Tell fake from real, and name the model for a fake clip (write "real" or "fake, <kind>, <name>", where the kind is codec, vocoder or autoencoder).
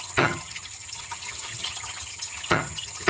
fake, vocoder, HiFi-GAN